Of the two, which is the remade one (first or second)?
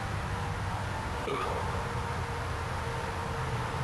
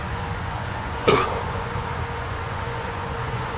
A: second